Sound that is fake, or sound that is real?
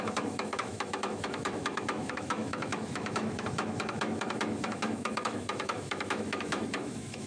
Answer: fake